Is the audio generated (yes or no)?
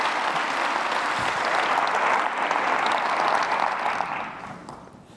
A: no